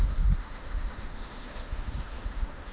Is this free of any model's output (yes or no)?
no